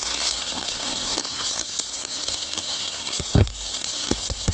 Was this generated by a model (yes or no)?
yes